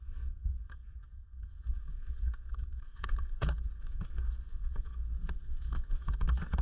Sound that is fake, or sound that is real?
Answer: fake